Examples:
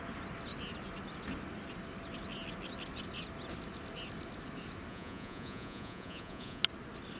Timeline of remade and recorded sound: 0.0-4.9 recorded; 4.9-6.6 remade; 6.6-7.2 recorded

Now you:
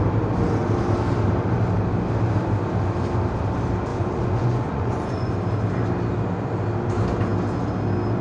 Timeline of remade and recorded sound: 0.0-3.9 recorded; 3.9-5.3 remade; 5.3-8.2 recorded